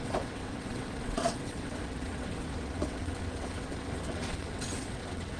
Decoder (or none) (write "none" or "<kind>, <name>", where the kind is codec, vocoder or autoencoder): vocoder, WaveNeXt